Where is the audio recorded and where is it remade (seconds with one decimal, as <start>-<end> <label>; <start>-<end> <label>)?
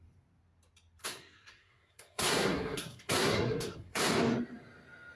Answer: 0.0-1.0 recorded; 1.0-4.1 remade; 4.1-5.2 recorded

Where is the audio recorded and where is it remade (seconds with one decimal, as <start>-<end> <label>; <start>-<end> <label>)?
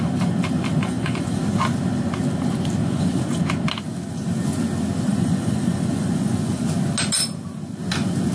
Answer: 0.0-0.8 recorded; 0.8-1.4 remade; 1.4-2.8 recorded; 2.8-3.4 remade; 3.4-5.1 recorded; 5.1-6.6 remade; 6.6-8.3 recorded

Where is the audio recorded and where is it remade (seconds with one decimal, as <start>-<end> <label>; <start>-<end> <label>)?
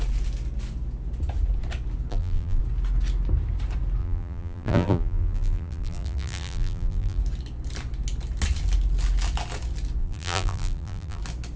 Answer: 0.0-2.1 recorded; 2.1-2.6 remade; 2.6-4.0 recorded; 4.0-7.2 remade; 7.2-10.0 recorded; 10.0-11.2 remade; 11.2-11.6 recorded